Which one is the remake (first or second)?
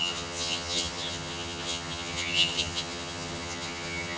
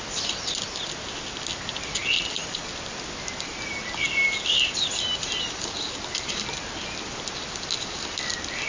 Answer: first